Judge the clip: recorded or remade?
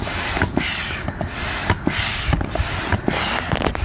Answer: recorded